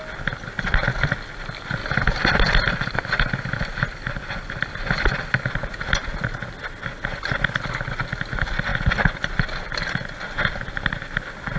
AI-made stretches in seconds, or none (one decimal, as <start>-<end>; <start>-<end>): 1.8-5.4

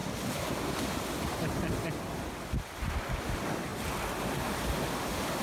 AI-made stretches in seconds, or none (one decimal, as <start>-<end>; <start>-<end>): none

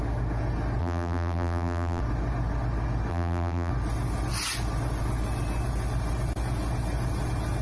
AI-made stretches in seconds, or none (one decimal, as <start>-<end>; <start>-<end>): 0.8-2.0; 3.1-3.7